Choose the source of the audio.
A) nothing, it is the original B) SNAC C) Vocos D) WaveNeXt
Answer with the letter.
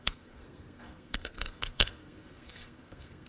B